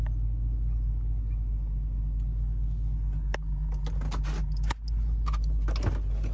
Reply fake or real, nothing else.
real